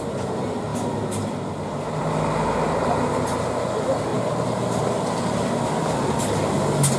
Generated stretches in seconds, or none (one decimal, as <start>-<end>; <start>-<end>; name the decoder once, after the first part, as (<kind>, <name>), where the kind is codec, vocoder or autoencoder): none